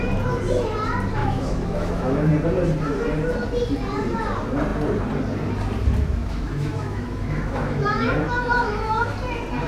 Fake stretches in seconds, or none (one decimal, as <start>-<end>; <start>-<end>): 1.2-2.3; 6.2-9.1